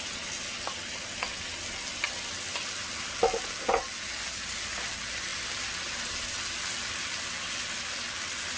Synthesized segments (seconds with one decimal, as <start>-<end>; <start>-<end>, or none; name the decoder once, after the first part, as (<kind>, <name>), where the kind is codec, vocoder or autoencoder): none